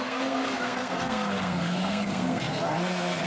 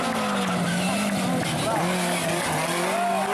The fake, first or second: first